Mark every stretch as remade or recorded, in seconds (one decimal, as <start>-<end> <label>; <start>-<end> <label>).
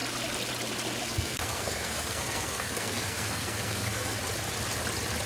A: 0.0-1.0 recorded; 1.0-4.2 remade; 4.2-5.3 recorded